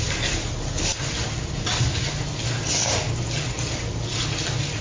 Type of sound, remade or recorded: recorded